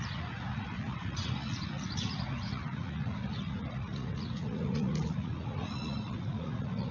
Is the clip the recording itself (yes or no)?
no